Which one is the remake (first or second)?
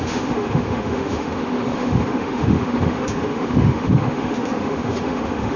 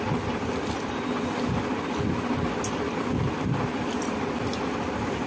first